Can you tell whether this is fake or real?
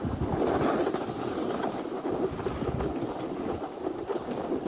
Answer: real